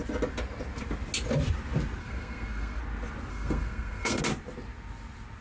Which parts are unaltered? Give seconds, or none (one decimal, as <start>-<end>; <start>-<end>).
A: 0.0-2.0; 2.8-3.3; 4.2-5.4